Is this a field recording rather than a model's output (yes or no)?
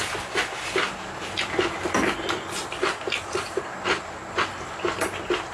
yes